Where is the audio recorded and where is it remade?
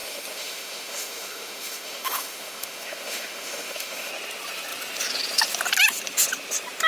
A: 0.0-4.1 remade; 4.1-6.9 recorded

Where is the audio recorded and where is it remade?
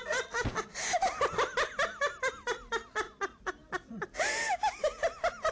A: 0.0-5.5 recorded